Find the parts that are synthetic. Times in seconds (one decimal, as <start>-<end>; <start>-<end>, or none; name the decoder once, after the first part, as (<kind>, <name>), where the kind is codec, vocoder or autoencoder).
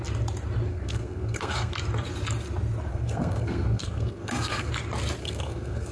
0.7-1.7 (codec, SNAC); 2.9-4.7; 5.2-5.9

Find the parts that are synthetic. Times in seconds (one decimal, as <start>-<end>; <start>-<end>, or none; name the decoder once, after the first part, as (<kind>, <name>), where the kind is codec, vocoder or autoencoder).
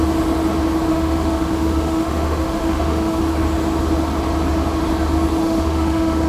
0.9-3.2 (autoencoder, DAC-VAE); 5.4-6.3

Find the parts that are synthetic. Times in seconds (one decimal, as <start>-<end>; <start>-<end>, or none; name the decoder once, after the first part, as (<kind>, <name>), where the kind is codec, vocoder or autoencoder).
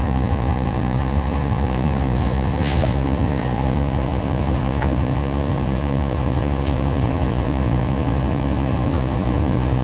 0.0-9.8 (vocoder, Vocos)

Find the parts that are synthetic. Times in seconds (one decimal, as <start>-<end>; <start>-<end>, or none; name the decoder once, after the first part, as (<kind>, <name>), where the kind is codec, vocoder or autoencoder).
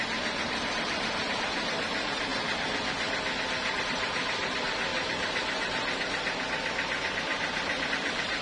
0.0-2.3 (vocoder, BigVGAN v2); 3.8-4.9; 7.9-8.4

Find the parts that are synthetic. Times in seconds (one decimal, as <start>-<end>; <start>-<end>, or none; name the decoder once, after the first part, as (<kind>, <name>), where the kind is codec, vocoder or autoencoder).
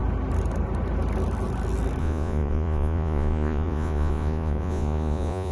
2.0-5.5 (vocoder, Vocos)